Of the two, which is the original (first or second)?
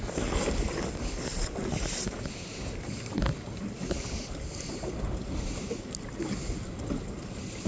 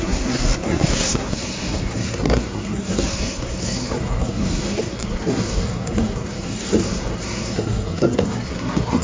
first